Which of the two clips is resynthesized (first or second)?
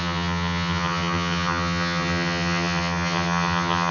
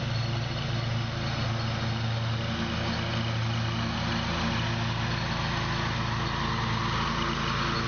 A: first